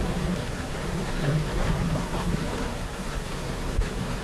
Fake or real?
fake